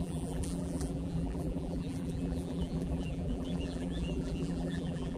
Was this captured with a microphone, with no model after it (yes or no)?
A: no